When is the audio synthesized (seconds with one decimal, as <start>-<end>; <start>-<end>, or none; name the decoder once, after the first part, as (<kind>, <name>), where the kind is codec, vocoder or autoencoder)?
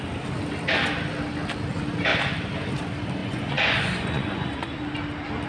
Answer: 3.2-4.8 (vocoder, Vocos)